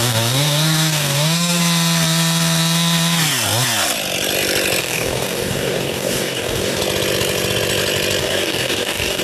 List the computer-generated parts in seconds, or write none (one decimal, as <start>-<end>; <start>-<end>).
0.0-1.6; 4.8-6.8; 8.2-9.2